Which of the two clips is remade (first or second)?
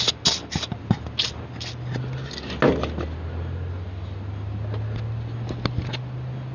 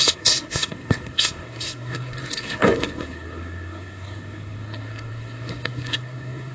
second